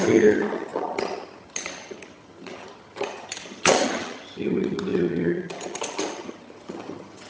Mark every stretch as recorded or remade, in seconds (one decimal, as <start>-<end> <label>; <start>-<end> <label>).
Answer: 0.0-7.3 remade